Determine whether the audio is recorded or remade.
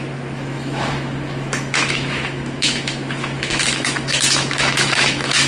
remade